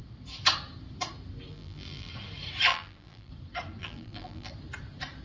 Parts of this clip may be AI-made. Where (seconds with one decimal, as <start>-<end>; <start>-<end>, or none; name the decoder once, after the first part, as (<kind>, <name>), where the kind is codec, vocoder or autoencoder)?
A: 1.5-2.1 (vocoder, BigVGAN v2); 2.7-3.3; 3.8-4.5